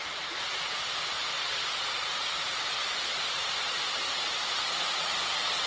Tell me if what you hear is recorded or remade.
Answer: recorded